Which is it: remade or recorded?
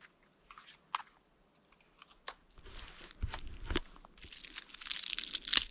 recorded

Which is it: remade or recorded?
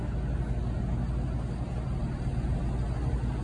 recorded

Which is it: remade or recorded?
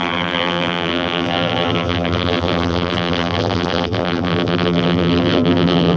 remade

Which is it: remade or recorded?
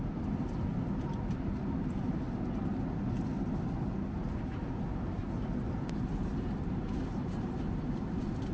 recorded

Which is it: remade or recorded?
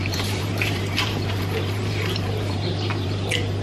remade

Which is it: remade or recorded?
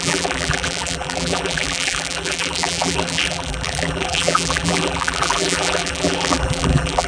remade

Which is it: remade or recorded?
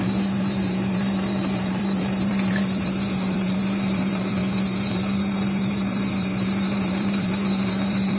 remade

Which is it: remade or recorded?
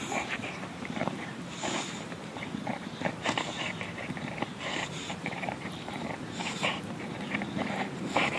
remade